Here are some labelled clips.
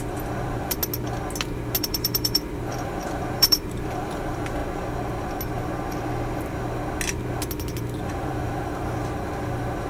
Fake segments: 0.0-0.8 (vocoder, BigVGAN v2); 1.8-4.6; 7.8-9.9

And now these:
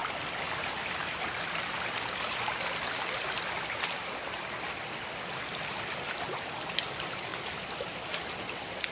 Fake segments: none

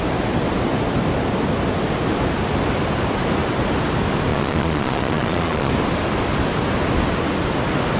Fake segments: 4.3-5.7 (vocoder, Vocos)

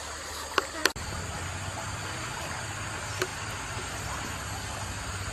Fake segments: none

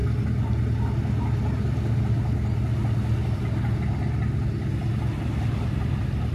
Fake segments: none

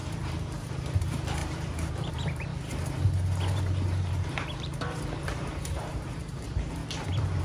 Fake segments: 0.7-2.5 (vocoder, BigVGAN v2); 3.5-6.8

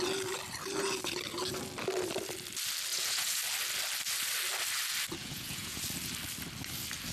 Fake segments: 2.9-3.4 (vocoder, Vocos); 5.2-5.8